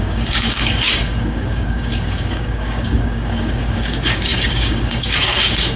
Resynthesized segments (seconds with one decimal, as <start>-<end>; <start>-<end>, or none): 0.0-5.8